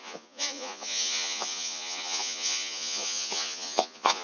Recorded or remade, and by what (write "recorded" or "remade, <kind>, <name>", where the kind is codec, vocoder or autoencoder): remade, vocoder, Vocos